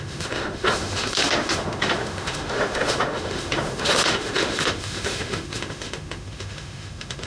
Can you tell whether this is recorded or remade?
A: remade